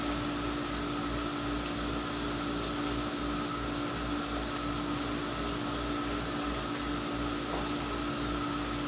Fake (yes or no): no